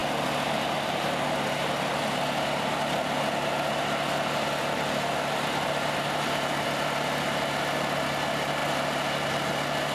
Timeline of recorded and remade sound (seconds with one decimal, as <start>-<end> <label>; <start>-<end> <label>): 0.0-9.9 recorded